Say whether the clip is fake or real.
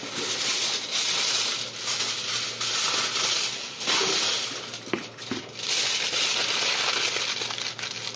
real